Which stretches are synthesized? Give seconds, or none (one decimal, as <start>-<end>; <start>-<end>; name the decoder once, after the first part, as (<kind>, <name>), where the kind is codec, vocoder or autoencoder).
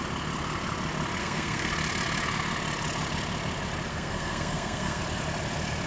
1.2-1.7 (codec, SNAC); 3.9-5.0